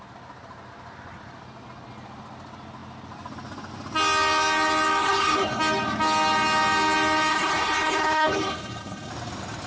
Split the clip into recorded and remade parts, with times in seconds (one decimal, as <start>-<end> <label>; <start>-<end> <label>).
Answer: 0.0-5.0 recorded; 5.0-5.6 remade; 5.6-7.3 recorded; 7.3-9.1 remade; 9.1-9.7 recorded